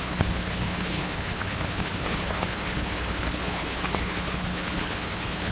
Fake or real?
fake